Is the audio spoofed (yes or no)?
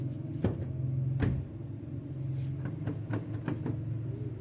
no